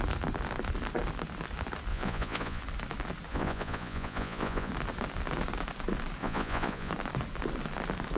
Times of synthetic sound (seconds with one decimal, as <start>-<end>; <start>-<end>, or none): 1.9-2.6; 3.3-4.7; 6.2-6.9